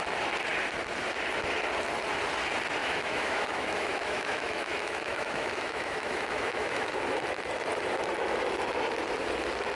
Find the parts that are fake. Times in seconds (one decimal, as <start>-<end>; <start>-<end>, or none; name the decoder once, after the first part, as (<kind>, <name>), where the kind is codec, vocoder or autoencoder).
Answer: 2.8-6.9 (autoencoder, DAC-VAE)

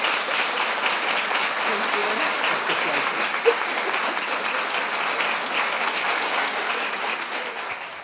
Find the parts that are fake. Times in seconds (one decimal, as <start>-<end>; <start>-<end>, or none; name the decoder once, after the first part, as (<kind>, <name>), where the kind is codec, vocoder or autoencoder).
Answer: 6.1-7.4 (codec, DAC)